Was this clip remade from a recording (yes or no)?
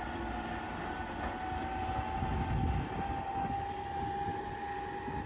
no